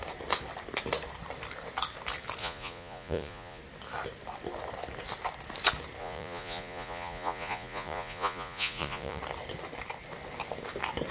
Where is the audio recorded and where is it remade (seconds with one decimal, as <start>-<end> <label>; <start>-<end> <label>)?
0.0-2.4 recorded; 2.4-3.6 remade; 3.6-6.0 recorded; 6.0-9.2 remade; 9.2-11.1 recorded